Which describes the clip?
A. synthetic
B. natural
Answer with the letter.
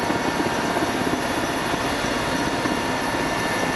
B